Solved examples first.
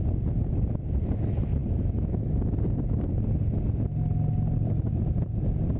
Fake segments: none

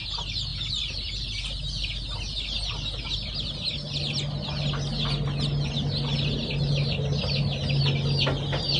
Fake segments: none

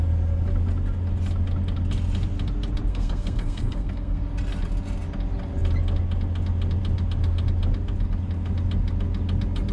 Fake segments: 2.9-4.2 (codec, SNAC)

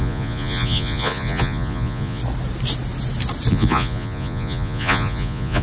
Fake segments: 0.0-2.2 (vocoder, Vocos); 3.5-5.6

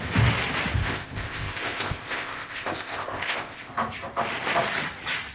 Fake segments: 0.8-3.7 (codec, ZipCodec)

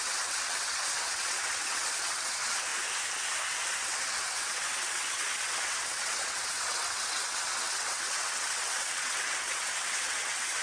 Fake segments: 0.0-2.7 (vocoder, WaveNeXt); 3.8-10.6

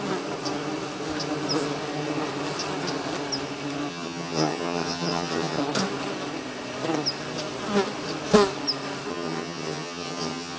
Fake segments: 3.9-5.6 (vocoder, HiFi-GAN); 9.1-10.6

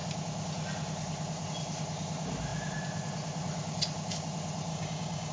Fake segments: 4.7-5.3 (codec, DAC)